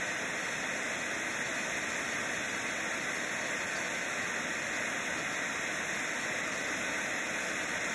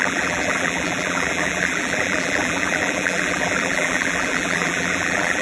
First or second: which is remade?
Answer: second